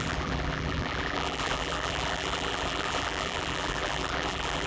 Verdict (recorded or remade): remade